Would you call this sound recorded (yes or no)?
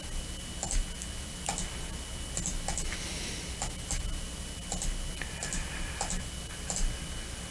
yes